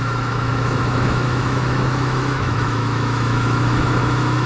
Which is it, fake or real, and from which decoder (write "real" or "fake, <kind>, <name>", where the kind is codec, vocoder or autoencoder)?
fake, autoencoder, DAC-VAE